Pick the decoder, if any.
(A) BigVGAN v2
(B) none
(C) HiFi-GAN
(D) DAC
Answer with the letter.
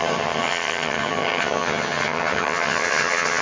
C